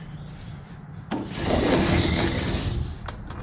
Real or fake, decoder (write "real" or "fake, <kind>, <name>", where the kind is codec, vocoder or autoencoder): real